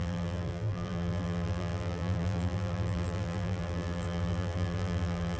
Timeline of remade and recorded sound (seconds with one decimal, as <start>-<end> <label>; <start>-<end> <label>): 0.0-5.4 remade